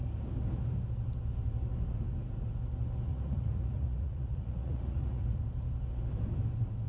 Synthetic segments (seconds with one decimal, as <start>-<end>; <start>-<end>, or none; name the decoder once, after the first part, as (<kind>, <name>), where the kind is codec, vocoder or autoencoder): 3.1-5.4 (vocoder, Vocos)